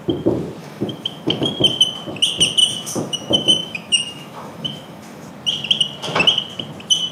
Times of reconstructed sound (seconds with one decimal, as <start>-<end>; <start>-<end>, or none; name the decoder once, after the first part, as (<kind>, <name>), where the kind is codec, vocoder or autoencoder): 0.6-1.5 (autoencoder, DAC-VAE); 2.6-5.3